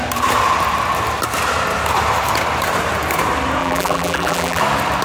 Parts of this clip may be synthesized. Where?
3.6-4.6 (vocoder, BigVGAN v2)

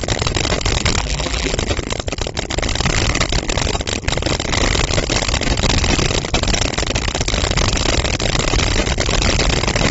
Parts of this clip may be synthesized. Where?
1.0-1.5 (vocoder, BigVGAN v2)